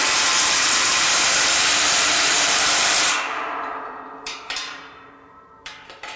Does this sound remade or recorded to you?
remade